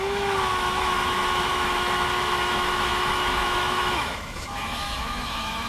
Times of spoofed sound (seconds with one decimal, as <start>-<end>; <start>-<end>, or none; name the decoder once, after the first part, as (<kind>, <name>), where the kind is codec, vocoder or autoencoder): 0.0-5.7 (autoencoder, DAC-VAE)